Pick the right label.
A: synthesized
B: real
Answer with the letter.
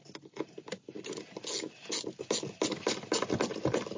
B